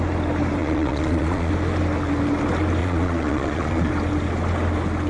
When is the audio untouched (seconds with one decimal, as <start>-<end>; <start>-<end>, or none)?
0.0-0.6; 1.5-2.8; 3.9-5.1